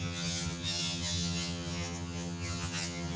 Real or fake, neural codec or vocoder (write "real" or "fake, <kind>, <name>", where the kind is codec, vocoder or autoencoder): fake, vocoder, HiFi-GAN